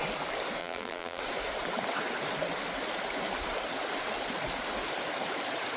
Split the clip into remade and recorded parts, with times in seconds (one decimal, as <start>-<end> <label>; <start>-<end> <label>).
0.0-0.6 recorded; 0.6-1.2 remade; 1.2-5.8 recorded